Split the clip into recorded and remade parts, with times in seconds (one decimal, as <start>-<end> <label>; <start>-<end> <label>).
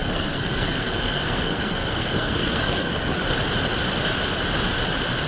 0.0-3.2 remade; 3.2-5.3 recorded